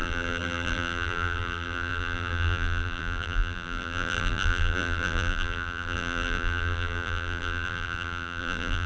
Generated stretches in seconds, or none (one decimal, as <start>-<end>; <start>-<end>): 0.0-8.9